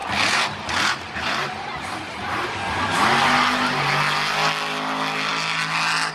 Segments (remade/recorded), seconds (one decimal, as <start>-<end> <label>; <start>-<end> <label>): 0.0-2.8 remade; 2.8-6.1 recorded